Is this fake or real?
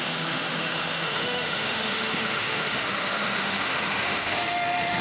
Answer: fake